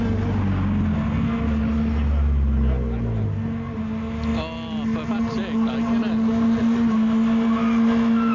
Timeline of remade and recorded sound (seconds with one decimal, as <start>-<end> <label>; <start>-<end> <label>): 0.0-8.3 recorded